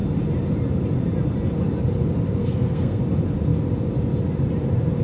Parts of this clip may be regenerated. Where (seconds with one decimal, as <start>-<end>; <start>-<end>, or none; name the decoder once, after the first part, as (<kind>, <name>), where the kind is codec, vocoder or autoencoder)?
2.4-3.0 (codec, SNAC)